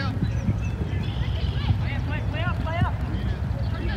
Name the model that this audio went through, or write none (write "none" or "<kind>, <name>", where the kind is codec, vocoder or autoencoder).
vocoder, BigVGAN v2